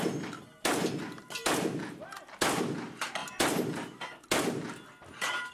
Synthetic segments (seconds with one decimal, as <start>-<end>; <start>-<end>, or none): none